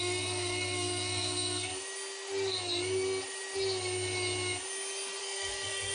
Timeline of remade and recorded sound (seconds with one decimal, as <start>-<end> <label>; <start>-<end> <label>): 0.0-1.7 remade; 1.7-5.2 recorded; 5.2-5.9 remade